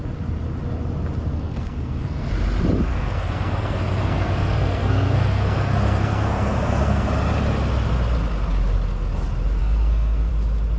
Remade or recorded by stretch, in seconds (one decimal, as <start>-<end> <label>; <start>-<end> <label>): 0.0-1.3 recorded; 1.3-2.3 remade; 2.3-2.9 recorded; 2.9-7.1 remade; 7.1-9.6 recorded; 9.6-10.3 remade; 10.3-10.8 recorded